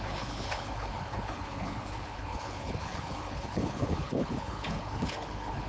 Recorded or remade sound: remade